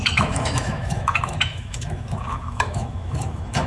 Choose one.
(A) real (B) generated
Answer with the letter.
B